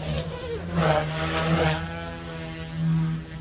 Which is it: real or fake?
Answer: real